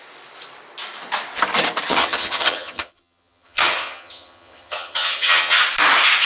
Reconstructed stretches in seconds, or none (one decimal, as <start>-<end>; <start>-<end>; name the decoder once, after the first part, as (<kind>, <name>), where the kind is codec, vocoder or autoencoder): 1.9-5.6 (vocoder, HiFi-GAN)